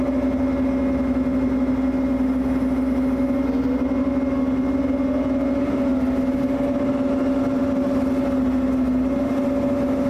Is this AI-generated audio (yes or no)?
no